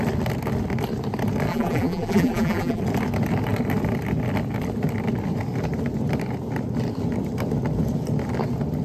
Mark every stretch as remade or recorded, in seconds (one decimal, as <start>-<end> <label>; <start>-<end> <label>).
0.0-1.5 recorded; 1.5-2.8 remade; 2.8-8.8 recorded